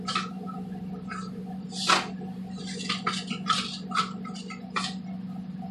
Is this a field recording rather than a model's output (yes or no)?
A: yes